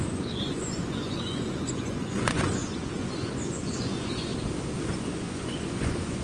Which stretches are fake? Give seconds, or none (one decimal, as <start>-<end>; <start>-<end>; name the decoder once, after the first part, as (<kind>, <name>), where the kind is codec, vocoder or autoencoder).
0.0-4.3 (vocoder, Vocos); 4.9-6.2